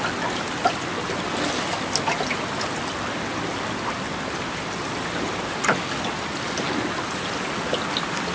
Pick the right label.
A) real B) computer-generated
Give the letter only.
A